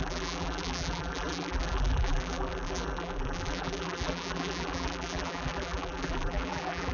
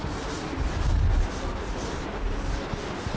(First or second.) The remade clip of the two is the first